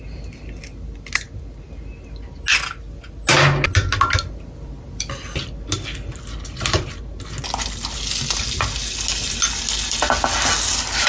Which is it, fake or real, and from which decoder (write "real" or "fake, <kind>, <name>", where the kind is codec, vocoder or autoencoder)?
real